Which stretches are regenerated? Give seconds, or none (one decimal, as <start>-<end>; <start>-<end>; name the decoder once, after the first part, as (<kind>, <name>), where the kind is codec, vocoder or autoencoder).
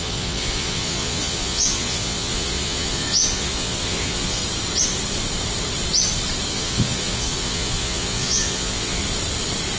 0.0-4.4 (vocoder, Vocos); 6.5-9.0